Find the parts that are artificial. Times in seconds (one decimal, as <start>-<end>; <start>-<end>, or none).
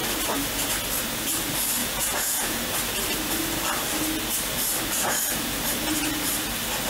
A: 1.8-2.6